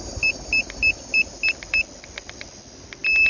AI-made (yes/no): no